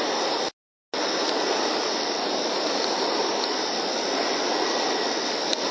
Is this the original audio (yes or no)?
yes